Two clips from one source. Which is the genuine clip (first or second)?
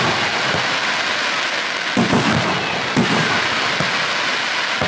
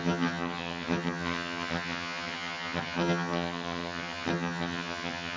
first